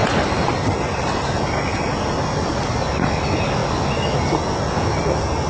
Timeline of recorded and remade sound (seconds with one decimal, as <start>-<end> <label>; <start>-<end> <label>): 0.0-5.5 recorded